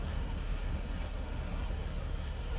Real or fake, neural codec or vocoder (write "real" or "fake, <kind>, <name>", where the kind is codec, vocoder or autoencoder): fake, codec, SNAC